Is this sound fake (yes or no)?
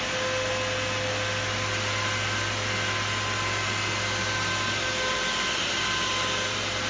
no